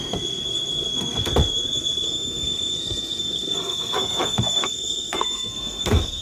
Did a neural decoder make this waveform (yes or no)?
yes